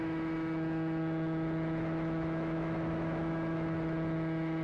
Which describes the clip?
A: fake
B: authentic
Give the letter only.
A